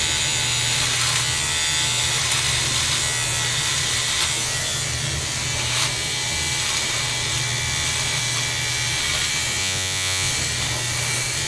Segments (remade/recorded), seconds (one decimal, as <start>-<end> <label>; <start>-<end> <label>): 0.0-9.6 recorded; 9.6-10.3 remade; 10.3-11.5 recorded